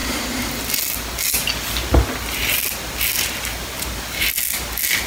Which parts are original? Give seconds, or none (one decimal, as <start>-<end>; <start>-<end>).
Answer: 0.0-5.1